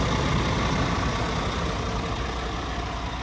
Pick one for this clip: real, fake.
real